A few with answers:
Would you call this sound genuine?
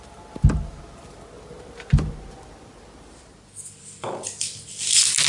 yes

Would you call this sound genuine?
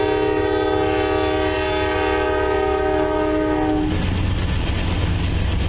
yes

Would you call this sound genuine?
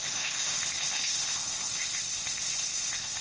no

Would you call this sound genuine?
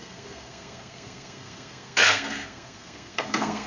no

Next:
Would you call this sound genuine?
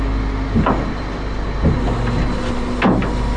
yes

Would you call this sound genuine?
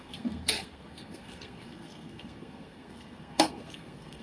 no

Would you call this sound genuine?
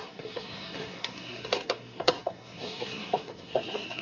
no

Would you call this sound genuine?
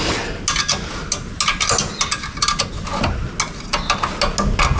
yes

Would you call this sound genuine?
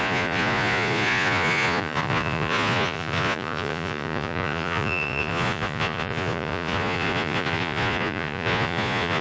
no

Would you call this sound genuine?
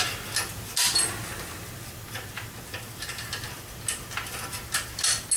yes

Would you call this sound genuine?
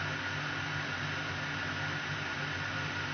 yes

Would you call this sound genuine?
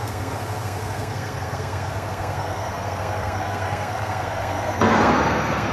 no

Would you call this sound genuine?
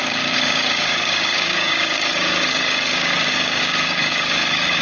no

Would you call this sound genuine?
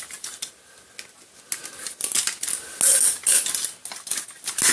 yes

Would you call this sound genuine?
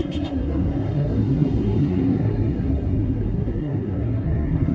no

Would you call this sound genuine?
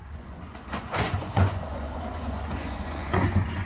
no